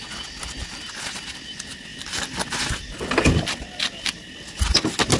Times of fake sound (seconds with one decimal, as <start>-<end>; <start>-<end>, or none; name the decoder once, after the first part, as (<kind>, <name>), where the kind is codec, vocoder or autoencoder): none